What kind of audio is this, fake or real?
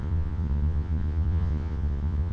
fake